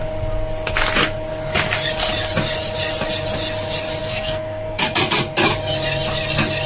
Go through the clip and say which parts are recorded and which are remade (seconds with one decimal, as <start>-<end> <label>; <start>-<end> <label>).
0.0-4.0 recorded; 4.0-4.8 remade; 4.8-6.7 recorded